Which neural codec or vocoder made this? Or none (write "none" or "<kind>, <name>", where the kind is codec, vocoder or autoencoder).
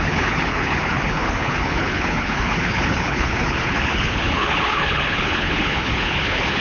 codec, HILCodec